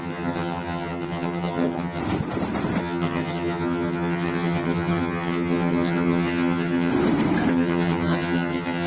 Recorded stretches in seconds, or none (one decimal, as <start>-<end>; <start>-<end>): 2.0-2.8; 6.9-7.5

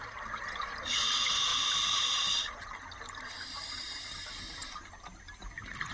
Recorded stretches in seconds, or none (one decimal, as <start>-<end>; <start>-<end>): 0.0-5.9